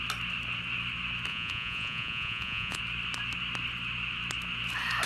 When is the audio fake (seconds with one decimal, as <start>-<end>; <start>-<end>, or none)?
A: 1.3-2.8